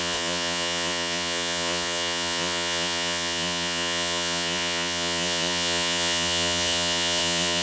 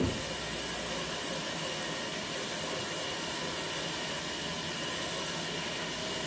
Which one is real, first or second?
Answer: second